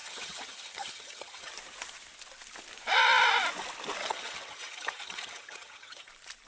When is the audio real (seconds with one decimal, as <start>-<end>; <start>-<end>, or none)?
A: 1.5-4.0; 6.1-6.5